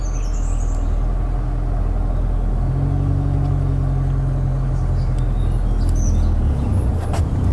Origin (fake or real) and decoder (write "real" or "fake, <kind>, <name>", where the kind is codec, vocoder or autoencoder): real